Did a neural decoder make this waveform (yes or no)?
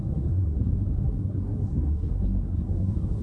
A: yes